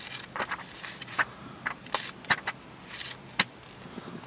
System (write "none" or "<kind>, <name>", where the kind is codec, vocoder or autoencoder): none